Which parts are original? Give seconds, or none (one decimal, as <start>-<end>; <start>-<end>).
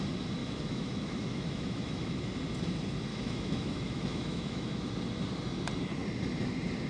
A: 0.0-0.4; 2.3-3.1; 4.9-6.9